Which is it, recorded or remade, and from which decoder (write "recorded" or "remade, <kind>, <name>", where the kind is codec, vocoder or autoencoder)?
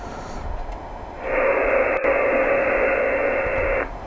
recorded